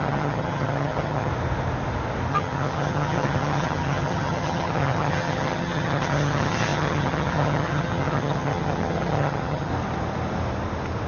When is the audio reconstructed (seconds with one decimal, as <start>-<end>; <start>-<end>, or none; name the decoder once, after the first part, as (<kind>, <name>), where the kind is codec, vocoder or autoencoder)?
0.0-1.3 (vocoder, HiFi-GAN); 2.3-9.7

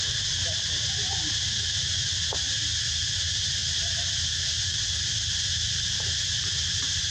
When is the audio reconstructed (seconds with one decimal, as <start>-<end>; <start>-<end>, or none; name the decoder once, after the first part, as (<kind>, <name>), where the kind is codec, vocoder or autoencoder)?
3.6-7.1 (vocoder, BigVGAN v2)

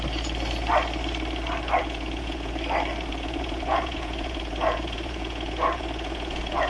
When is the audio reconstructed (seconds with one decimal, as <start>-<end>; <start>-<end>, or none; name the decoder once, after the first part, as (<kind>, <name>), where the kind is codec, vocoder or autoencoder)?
1.8-2.5 (vocoder, Vocos); 3.1-6.7

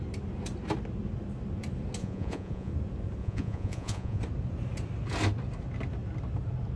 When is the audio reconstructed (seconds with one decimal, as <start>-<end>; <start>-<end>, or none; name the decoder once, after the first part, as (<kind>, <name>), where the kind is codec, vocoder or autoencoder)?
2.0-2.7 (vocoder, Vocos); 3.2-4.2

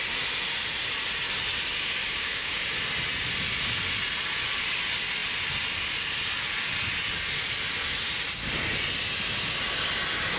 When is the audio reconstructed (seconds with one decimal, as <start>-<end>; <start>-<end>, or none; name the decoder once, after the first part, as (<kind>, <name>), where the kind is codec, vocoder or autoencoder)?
2.0-2.7 (codec, DAC)